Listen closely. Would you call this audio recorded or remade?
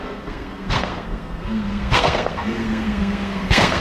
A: remade